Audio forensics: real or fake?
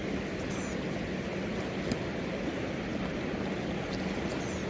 real